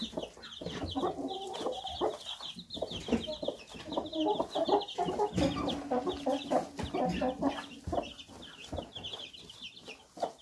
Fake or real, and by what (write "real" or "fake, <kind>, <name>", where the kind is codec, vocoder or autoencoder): real